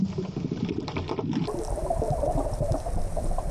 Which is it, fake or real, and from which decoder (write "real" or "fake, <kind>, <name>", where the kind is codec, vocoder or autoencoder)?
real